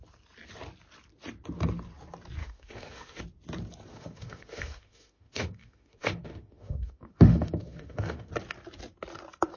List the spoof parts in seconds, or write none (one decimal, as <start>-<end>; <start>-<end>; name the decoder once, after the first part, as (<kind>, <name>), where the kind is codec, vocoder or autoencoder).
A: 2.4-3.2 (autoencoder, DAC-VAE); 3.9-8.3